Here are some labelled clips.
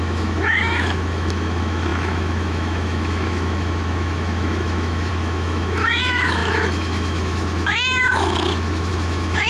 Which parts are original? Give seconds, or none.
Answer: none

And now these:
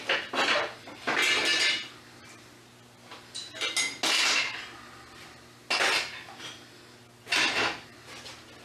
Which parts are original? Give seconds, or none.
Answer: 0.0-8.6